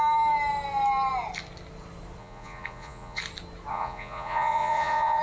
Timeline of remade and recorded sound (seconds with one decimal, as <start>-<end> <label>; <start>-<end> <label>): 0.0-2.2 recorded; 2.2-3.2 remade; 3.2-3.7 recorded; 3.7-5.2 remade